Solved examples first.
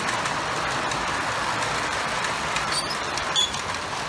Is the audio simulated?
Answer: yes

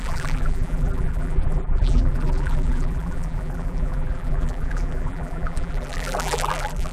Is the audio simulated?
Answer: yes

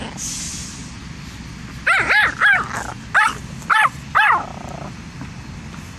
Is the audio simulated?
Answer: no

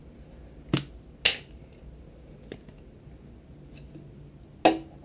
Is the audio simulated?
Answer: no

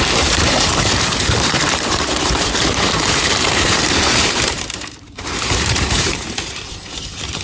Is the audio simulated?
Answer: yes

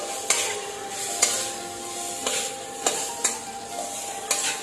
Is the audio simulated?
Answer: no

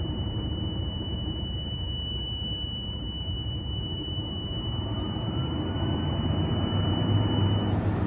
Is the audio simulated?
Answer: yes